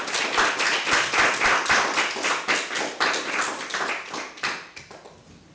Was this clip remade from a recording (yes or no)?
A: no